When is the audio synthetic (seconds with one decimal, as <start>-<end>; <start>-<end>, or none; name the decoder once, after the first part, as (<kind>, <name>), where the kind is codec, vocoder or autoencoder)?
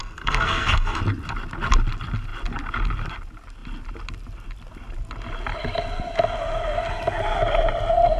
0.0-1.0 (codec, SNAC)